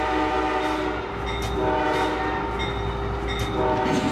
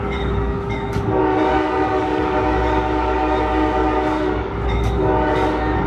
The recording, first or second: first